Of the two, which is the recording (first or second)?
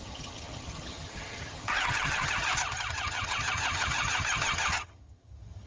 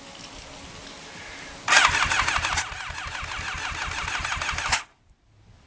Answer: second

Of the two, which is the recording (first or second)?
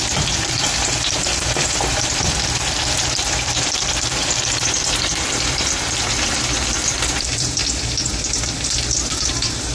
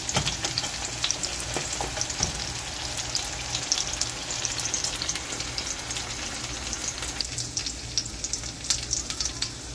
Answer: second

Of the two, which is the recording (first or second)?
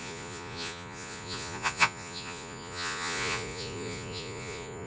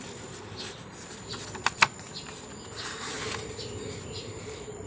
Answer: second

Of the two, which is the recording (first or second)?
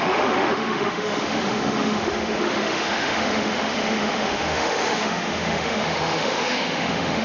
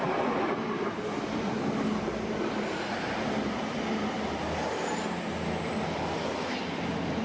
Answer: second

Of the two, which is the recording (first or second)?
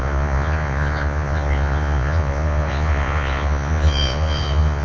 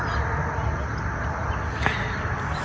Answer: second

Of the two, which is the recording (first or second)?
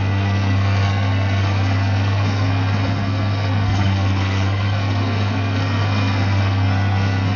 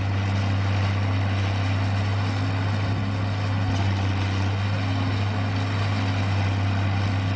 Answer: second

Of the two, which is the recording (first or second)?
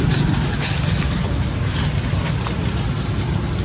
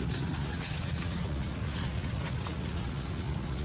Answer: first